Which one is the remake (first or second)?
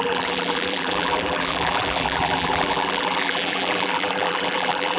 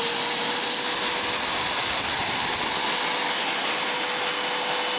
first